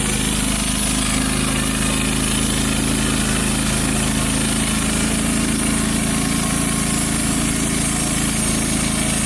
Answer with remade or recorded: recorded